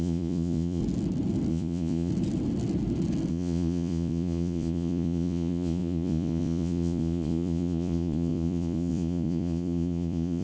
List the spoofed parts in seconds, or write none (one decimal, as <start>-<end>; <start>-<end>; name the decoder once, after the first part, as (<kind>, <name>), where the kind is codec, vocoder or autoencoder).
0.0-0.8 (vocoder, Vocos); 1.5-2.1; 3.3-10.4